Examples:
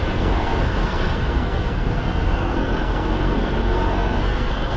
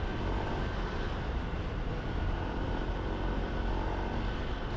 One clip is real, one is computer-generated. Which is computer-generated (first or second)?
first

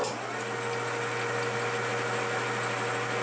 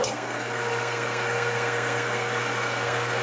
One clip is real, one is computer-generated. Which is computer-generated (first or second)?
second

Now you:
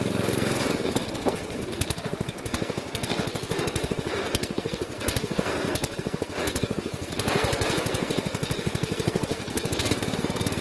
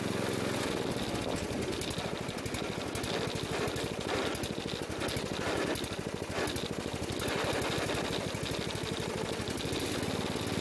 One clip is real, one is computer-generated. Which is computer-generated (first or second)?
first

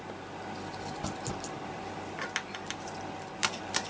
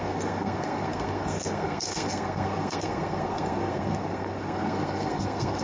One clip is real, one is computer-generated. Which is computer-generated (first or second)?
second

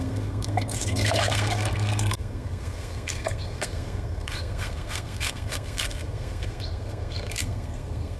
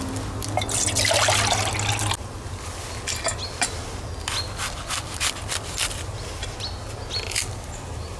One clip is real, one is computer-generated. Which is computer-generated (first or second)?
first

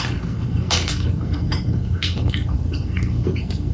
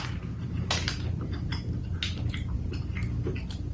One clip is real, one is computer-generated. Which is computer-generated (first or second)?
first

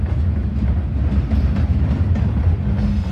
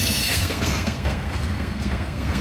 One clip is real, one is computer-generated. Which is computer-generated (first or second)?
second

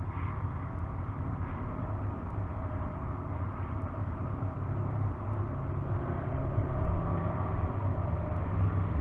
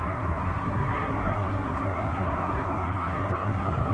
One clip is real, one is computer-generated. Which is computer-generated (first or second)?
second